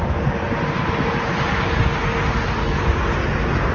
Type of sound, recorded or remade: recorded